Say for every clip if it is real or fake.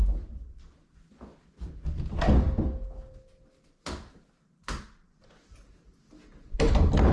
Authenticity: real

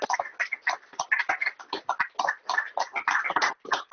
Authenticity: real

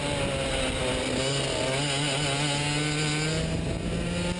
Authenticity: real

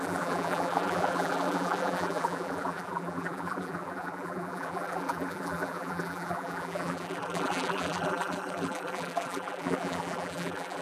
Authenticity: fake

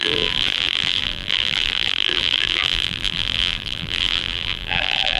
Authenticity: fake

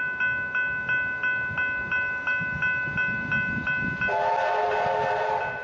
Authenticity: real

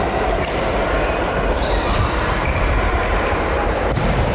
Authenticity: fake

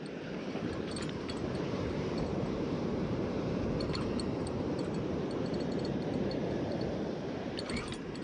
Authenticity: fake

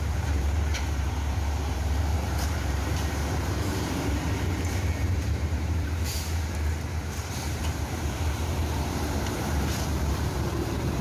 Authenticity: fake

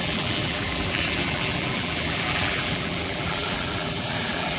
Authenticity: fake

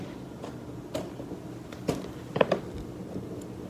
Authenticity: real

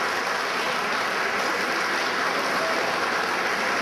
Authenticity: real